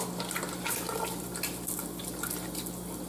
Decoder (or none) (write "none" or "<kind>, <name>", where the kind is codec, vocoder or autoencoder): none